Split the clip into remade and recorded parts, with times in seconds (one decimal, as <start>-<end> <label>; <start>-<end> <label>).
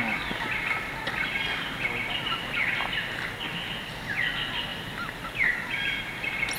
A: 0.0-4.7 recorded; 4.7-5.5 remade; 5.5-6.6 recorded